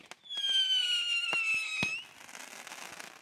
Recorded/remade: recorded